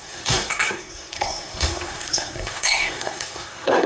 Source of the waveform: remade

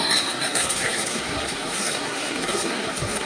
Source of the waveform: remade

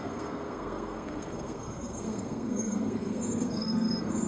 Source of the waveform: remade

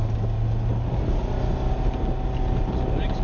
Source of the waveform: recorded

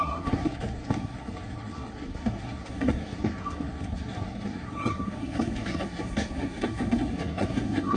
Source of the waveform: remade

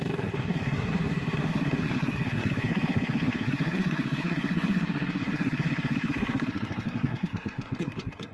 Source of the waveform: remade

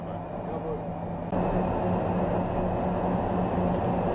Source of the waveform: recorded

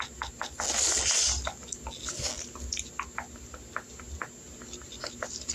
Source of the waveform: recorded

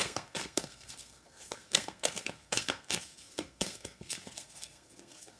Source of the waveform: remade